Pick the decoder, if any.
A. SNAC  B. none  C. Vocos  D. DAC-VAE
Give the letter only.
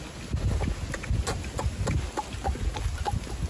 B